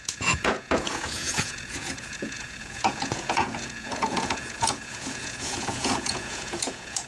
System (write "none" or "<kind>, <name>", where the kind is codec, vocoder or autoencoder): vocoder, Vocos